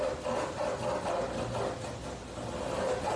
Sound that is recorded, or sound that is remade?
recorded